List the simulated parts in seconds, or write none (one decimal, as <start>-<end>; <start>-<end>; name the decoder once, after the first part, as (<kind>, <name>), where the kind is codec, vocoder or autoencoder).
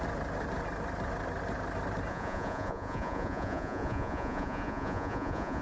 2.1-5.6 (vocoder, Vocos)